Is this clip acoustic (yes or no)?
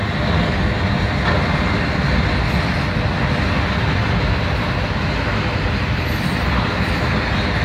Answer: yes